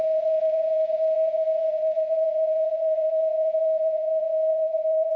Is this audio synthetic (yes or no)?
yes